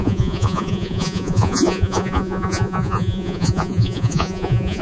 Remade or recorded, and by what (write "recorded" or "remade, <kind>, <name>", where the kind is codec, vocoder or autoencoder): remade, vocoder, Vocos